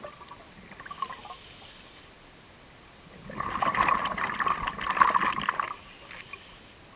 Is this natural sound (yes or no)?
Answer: yes